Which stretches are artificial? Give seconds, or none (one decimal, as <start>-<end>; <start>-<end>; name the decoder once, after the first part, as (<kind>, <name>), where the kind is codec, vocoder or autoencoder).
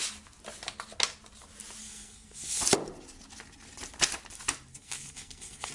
1.8-2.6 (codec, SNAC); 4.7-5.7